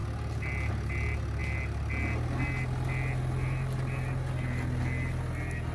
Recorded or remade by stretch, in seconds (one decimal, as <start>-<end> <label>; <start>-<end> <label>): 0.0-5.7 recorded